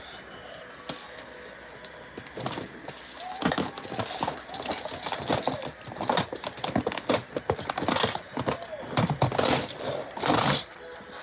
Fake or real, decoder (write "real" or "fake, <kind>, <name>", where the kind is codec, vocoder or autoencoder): real